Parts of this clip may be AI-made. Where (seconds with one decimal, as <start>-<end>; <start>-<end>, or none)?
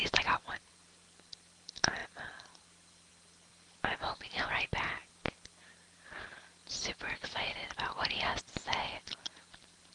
none